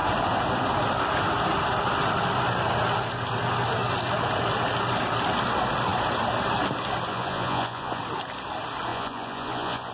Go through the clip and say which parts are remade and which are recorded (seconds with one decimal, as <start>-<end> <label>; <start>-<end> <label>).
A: 0.0-7.1 recorded; 7.1-8.0 remade; 8.0-8.9 recorded; 8.9-9.9 remade